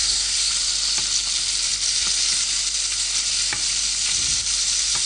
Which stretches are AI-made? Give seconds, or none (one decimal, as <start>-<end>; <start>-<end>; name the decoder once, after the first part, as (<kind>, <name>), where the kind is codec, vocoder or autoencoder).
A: 0.0-0.5 (codec, SNAC)